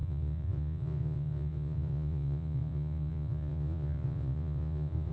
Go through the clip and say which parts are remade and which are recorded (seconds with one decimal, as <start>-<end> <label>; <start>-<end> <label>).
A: 0.0-5.1 remade